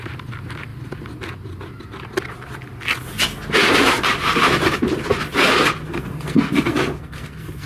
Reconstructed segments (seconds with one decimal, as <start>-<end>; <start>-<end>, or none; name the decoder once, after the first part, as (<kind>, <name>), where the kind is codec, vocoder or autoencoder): 5.9-7.7 (codec, SNAC)